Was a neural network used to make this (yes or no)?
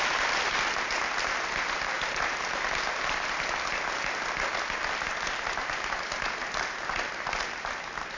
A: no